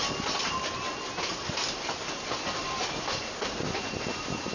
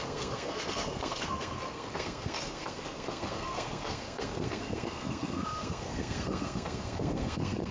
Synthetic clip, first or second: second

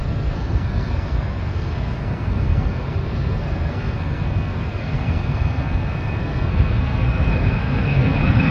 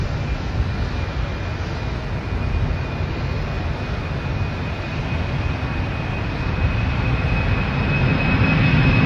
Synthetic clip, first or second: first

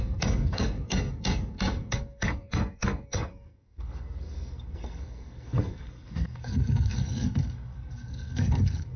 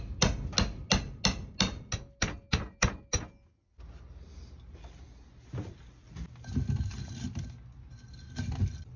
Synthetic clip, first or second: first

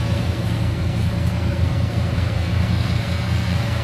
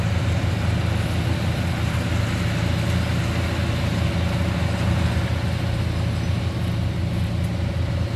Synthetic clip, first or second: first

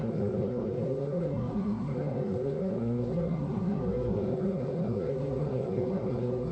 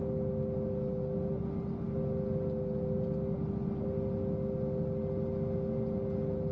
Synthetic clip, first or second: first